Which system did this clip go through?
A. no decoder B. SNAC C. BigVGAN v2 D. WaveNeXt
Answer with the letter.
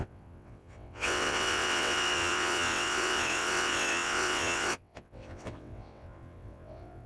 D